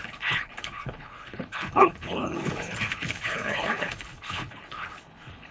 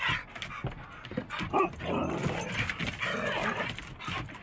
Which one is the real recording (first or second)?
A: second